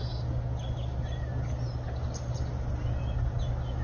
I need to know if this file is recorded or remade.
recorded